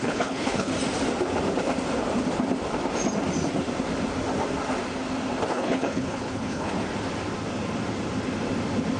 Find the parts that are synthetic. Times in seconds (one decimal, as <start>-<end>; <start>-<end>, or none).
0.0-0.7; 5.5-6.7